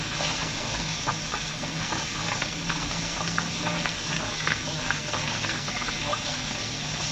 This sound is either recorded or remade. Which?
remade